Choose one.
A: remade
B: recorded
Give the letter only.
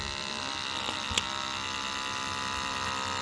B